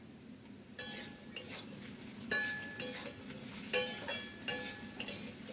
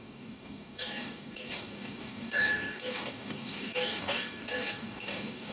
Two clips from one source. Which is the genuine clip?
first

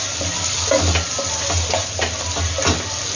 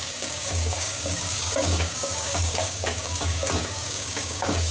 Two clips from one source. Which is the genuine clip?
first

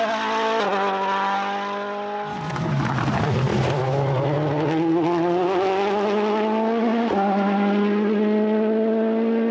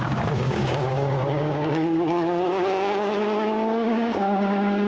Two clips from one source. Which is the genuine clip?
first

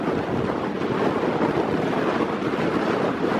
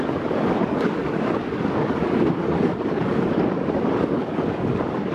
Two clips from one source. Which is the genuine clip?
first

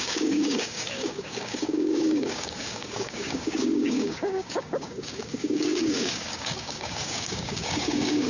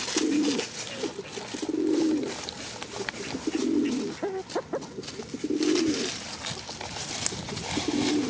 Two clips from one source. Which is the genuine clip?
second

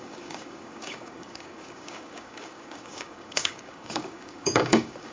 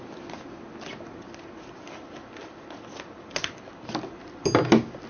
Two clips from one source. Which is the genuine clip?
second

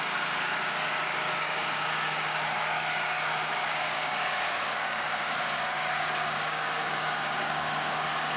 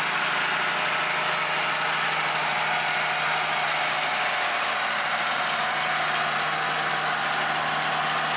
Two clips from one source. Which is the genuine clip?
second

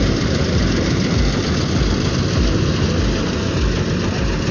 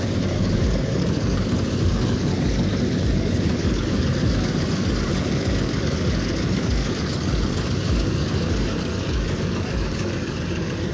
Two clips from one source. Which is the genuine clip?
first